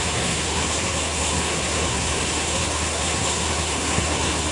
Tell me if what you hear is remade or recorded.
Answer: remade